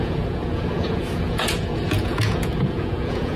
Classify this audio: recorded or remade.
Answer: remade